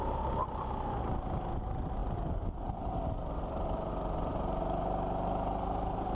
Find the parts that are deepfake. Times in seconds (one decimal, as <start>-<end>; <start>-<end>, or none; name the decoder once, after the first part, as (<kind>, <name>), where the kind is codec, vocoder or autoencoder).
none